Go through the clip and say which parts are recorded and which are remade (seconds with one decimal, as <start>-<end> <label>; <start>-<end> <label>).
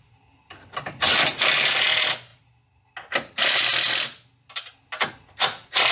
0.0-5.9 recorded